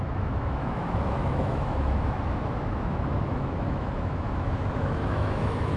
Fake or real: fake